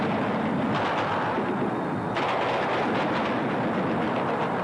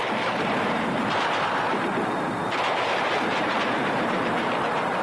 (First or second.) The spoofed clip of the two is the second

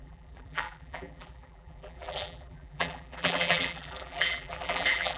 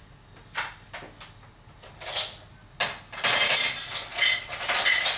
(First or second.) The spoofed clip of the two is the first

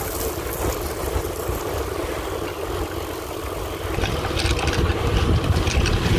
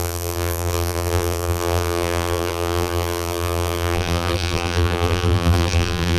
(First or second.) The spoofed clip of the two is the second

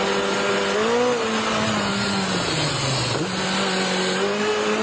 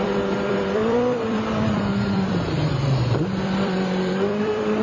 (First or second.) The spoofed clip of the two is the second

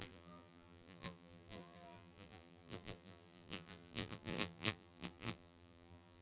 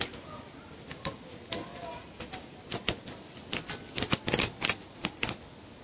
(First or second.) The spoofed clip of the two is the first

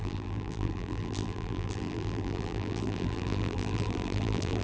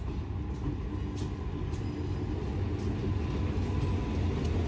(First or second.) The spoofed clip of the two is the first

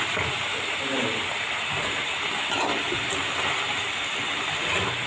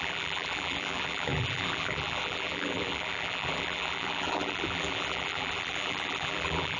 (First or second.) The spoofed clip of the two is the second